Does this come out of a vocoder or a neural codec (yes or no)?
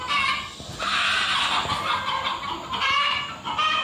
no